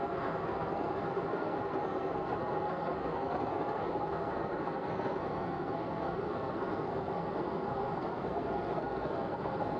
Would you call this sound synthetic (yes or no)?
yes